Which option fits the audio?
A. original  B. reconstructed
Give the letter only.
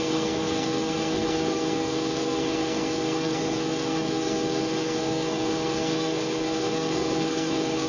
B